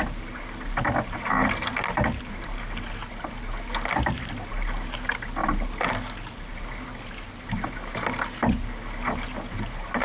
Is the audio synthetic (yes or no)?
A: no